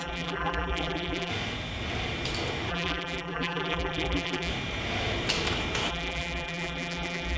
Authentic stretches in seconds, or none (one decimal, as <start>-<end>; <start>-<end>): 1.3-2.7; 4.5-5.9